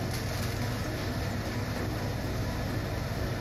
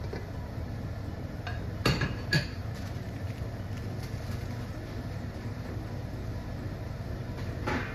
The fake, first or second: second